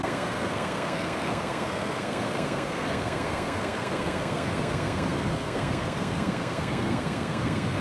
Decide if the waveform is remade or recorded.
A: remade